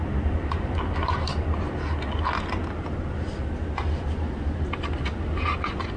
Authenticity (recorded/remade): recorded